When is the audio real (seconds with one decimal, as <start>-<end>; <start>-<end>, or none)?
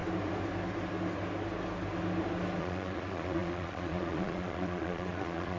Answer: 0.0-2.6